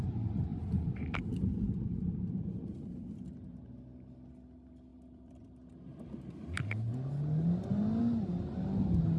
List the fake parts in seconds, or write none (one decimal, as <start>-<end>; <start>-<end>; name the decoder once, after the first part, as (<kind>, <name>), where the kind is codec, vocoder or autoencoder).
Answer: 0.5-3.3 (vocoder, BigVGAN v2); 4.9-6.3